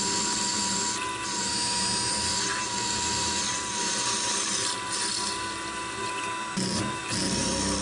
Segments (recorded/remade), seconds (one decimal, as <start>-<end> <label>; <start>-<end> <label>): 0.0-1.5 recorded; 1.5-2.1 remade; 2.1-7.8 recorded